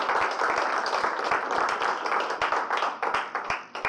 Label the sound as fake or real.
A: real